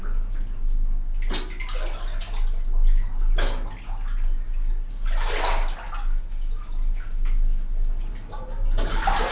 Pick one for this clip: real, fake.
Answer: real